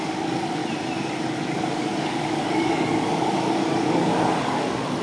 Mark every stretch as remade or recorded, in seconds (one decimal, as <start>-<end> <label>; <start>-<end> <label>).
0.0-0.6 remade; 0.6-1.3 recorded; 1.3-5.0 remade